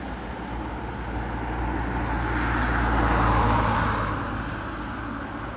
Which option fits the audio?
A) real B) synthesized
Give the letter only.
A